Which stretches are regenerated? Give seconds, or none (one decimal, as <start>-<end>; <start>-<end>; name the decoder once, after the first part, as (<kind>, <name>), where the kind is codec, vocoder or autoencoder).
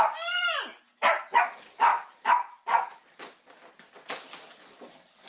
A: none